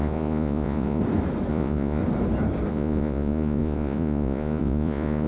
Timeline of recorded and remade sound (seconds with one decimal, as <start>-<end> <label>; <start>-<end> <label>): 0.0-1.0 remade; 1.0-1.5 recorded; 1.5-2.0 remade; 2.0-2.7 recorded; 2.7-5.3 remade